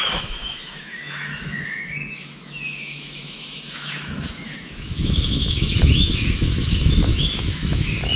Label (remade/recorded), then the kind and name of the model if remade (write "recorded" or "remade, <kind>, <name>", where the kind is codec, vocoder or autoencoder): remade, autoencoder, DAC-VAE